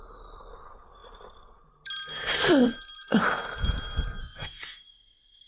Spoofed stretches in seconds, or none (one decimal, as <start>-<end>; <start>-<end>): 4.2-5.5